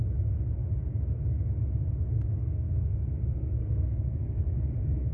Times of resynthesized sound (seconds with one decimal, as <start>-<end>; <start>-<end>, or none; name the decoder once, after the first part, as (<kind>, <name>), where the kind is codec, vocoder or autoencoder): 2.3-4.5 (codec, SNAC)